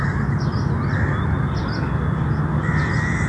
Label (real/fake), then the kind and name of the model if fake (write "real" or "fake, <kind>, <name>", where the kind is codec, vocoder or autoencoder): real